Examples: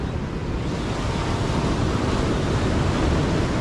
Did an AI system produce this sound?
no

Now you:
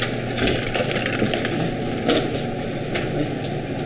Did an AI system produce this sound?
no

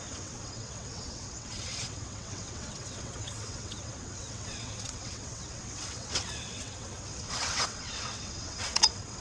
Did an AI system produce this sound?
yes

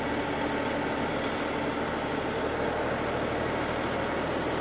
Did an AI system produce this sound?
no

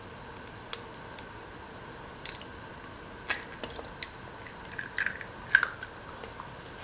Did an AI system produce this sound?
no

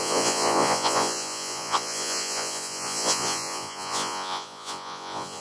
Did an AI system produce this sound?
yes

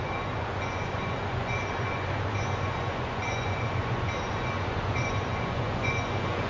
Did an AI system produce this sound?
yes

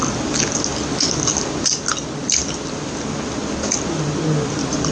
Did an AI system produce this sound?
no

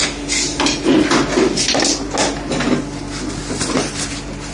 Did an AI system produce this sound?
no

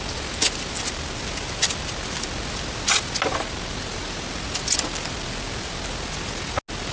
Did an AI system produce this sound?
no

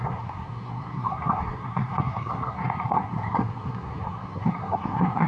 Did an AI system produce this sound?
yes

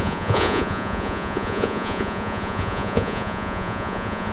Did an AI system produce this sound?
yes